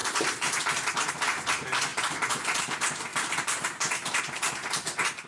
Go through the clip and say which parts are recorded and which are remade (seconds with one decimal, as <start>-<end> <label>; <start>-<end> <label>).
0.0-3.1 recorded; 3.1-4.2 remade; 4.2-5.3 recorded